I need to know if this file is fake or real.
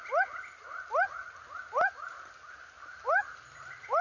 real